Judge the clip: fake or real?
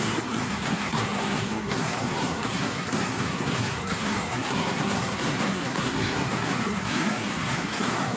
fake